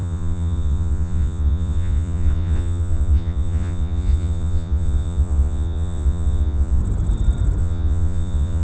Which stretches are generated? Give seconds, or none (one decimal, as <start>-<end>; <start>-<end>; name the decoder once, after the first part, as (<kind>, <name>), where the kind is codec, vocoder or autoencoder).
0.0-6.8 (vocoder, Vocos); 7.6-8.6